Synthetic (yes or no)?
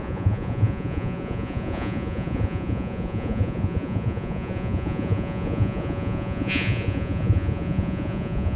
yes